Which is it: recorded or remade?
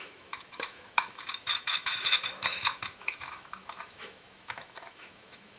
remade